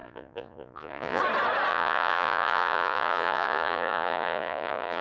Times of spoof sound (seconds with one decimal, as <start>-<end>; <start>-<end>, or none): 0.0-1.2; 1.7-5.0